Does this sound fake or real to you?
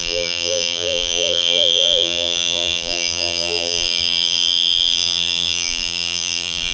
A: fake